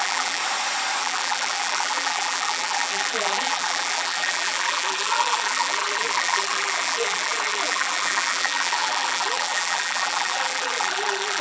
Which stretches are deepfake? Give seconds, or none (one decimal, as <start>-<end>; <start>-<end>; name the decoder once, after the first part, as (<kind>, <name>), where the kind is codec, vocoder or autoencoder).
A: 0.0-0.4 (vocoder, BigVGAN v2); 1.0-11.4